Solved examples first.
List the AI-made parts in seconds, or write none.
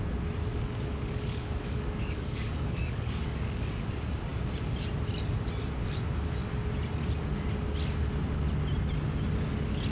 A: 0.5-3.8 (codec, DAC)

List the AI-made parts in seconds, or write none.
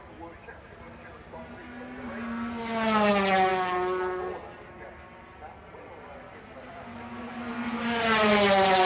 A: none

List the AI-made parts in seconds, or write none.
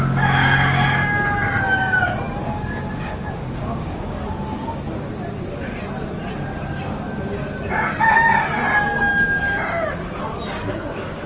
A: 2.4-4.8 (codec, DAC)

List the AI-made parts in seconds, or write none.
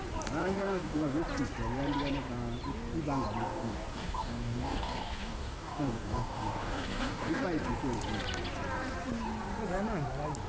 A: 0.4-1.2 (codec, DAC); 3.4-7.4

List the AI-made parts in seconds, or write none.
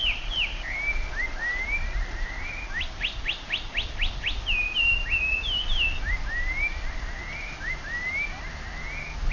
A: none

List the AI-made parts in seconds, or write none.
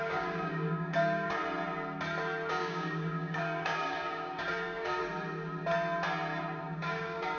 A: 0.0-1.4 (codec, DAC); 2.5-5.0; 6.6-7.4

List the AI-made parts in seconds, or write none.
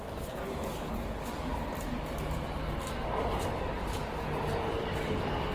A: 0.0-1.5 (codec, DAC); 3.6-4.0; 4.8-5.5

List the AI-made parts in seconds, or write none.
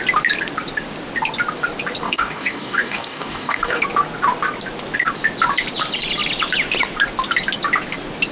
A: 2.0-3.8 (codec, DAC)